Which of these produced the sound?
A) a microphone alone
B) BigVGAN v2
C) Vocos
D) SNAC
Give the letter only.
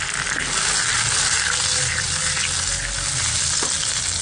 A